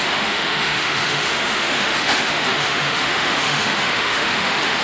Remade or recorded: remade